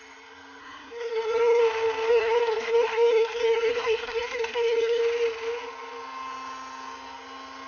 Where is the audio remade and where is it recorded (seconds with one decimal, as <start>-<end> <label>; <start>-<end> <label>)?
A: 0.0-0.6 recorded; 0.6-1.6 remade; 1.6-2.1 recorded; 2.1-5.0 remade; 5.0-7.7 recorded